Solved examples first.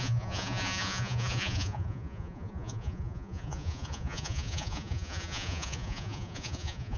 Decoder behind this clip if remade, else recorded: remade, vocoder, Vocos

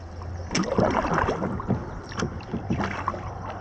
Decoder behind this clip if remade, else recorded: recorded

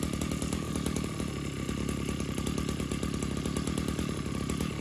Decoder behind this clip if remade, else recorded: recorded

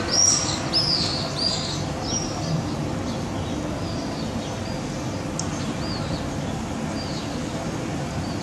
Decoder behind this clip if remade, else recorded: recorded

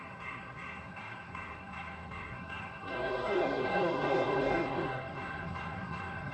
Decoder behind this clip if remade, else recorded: remade, codec, SNAC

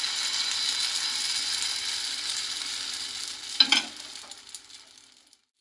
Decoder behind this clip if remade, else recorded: recorded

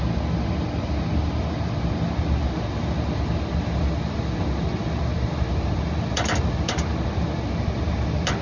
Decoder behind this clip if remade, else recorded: recorded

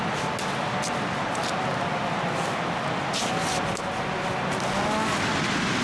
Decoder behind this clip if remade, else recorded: recorded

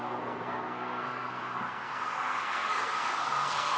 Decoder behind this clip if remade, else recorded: remade, codec, SNAC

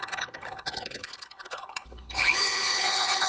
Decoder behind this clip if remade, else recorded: remade, codec, HILCodec